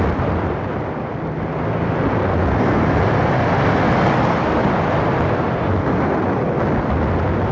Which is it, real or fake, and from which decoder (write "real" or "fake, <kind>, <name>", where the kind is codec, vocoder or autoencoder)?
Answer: real